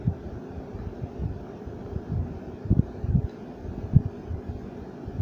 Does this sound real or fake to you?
real